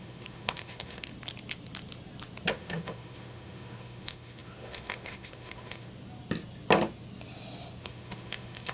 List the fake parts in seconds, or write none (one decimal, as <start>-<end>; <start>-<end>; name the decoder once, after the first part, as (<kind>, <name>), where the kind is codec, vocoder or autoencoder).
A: 0.0-1.1 (autoencoder, DAC-VAE); 2.5-5.9; 7.8-8.7